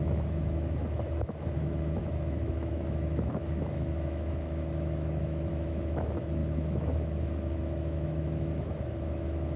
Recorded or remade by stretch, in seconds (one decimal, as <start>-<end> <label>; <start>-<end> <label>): 0.0-9.6 remade